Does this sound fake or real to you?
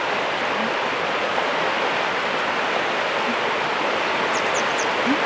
real